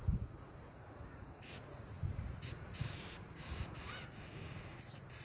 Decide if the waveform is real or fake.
fake